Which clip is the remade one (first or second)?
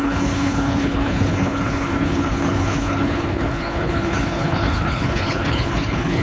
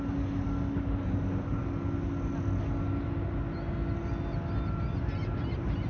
first